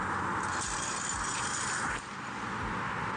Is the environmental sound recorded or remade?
recorded